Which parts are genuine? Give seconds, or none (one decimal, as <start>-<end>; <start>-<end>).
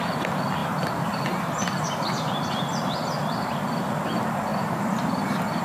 0.0-0.6; 4.0-4.5